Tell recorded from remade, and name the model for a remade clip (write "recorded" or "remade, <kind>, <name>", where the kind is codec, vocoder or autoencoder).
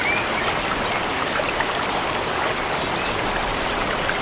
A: recorded